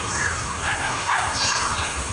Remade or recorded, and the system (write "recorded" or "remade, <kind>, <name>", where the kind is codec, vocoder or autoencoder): remade, codec, SNAC